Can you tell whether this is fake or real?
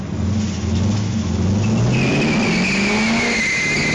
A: real